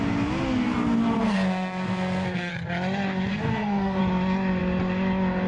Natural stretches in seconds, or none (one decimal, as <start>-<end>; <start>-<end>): 0.0-1.2; 2.5-3.3; 4.0-5.5